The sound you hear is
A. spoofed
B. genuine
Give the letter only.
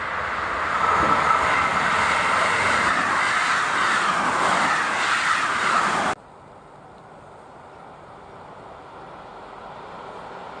B